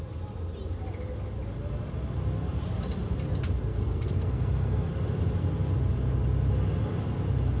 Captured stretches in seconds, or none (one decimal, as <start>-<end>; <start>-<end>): 0.0-3.7; 4.9-7.6